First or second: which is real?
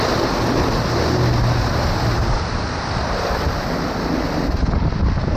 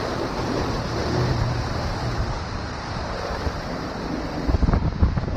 first